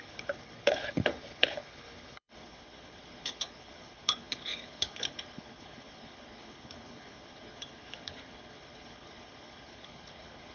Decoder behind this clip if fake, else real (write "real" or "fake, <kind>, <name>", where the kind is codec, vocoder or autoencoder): fake, codec, HILCodec